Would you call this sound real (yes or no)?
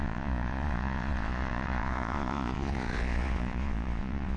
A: no